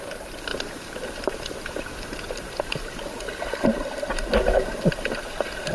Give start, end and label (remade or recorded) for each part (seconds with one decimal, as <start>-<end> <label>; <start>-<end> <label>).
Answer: 0.0-3.7 recorded; 3.7-4.3 remade; 4.3-5.7 recorded